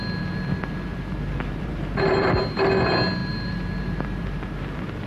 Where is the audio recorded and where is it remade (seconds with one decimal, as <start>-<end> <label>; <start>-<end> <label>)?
0.0-0.9 recorded; 0.9-2.7 remade; 2.7-3.2 recorded; 3.2-4.6 remade; 4.6-5.1 recorded